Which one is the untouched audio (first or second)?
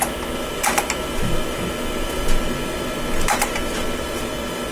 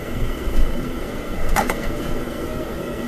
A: first